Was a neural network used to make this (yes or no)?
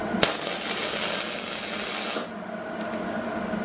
no